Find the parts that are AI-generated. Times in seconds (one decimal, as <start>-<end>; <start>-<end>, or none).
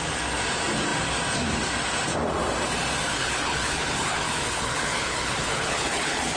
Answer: 3.2-6.4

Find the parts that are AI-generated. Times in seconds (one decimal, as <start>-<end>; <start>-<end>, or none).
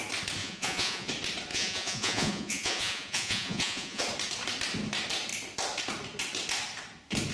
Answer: 0.4-1.1; 1.5-4.0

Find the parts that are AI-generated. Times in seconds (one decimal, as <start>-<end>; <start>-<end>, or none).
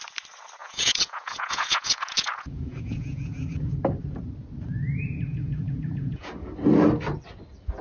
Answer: 0.6-3.7; 5.3-6.3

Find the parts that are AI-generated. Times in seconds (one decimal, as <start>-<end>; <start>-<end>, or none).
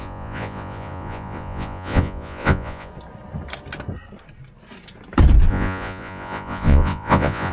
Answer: 0.0-2.9; 5.5-7.5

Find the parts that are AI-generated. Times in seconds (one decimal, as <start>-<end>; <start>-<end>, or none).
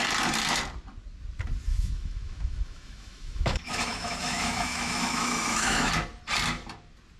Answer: 1.7-5.9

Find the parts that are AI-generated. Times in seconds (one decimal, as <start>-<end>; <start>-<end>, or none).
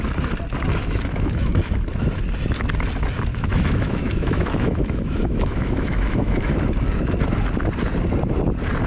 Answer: 0.8-1.6; 3.3-6.6